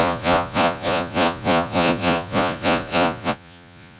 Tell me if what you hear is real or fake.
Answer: fake